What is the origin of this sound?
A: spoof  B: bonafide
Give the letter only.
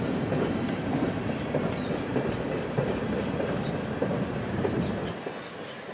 B